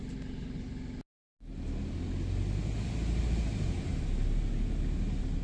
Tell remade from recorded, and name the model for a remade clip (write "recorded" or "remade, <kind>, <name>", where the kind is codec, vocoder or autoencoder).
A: recorded